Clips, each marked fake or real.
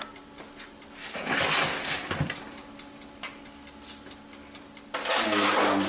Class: real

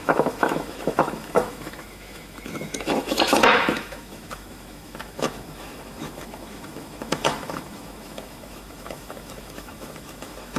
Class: fake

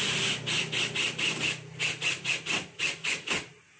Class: real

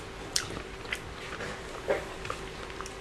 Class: real